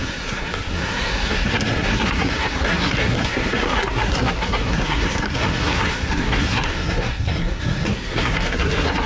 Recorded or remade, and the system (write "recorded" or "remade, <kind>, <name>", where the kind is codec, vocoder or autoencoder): remade, codec, SNAC